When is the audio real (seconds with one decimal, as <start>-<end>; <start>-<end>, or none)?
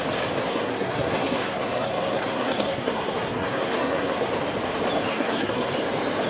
0.0-0.5; 4.3-5.1; 5.7-6.3